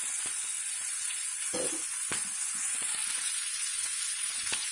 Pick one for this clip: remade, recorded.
remade